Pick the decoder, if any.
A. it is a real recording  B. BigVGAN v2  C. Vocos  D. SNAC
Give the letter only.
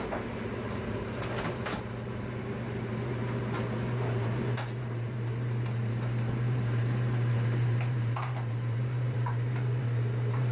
B